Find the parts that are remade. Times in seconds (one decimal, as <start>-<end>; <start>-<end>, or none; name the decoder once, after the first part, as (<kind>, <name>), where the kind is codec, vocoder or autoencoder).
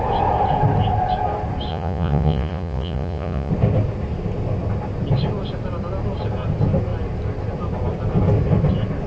1.7-3.5 (vocoder, Vocos)